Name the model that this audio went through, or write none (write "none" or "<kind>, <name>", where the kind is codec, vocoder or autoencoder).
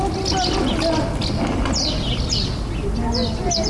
none